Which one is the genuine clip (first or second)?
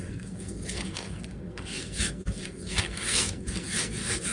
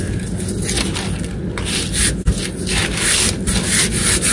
second